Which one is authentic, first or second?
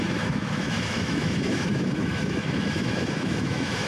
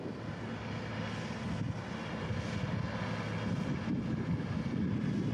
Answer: second